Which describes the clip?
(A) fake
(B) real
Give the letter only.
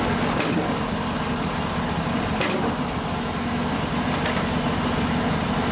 B